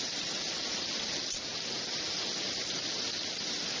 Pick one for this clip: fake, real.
real